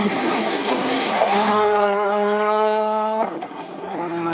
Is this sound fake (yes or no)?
yes